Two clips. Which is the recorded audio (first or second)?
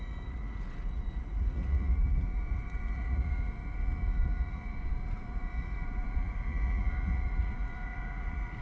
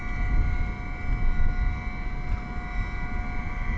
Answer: second